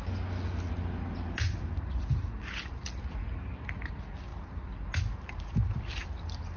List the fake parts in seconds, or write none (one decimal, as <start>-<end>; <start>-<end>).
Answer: none